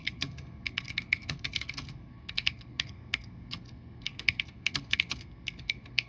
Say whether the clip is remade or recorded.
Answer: remade